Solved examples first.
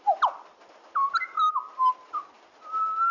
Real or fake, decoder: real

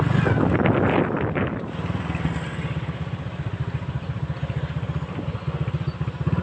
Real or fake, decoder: real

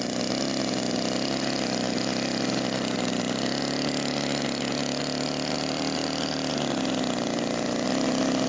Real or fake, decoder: real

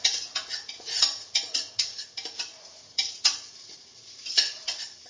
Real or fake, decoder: fake, vocoder, Vocos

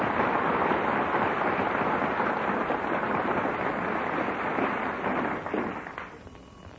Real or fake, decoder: real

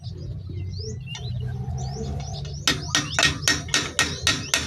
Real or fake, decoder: real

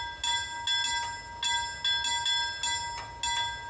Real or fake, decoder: real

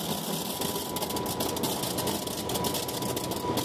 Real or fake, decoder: real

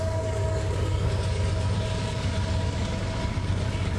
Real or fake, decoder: fake, codec, DAC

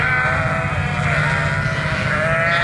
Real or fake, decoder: real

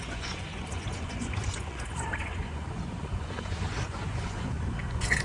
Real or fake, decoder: fake, vocoder, Vocos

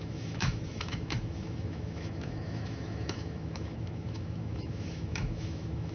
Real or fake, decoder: fake, autoencoder, DAC-VAE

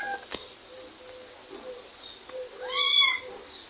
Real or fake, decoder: real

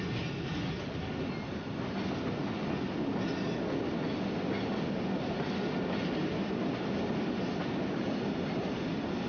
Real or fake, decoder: real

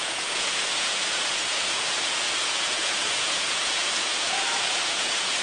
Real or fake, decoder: fake, vocoder, Vocos